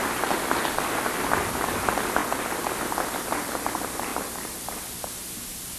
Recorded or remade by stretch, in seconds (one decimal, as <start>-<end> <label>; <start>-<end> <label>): 0.0-5.8 recorded